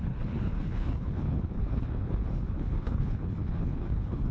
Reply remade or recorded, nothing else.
remade